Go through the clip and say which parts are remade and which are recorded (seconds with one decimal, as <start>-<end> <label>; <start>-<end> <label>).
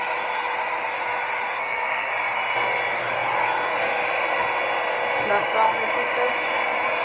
0.0-1.5 recorded; 1.5-2.1 remade; 2.1-7.0 recorded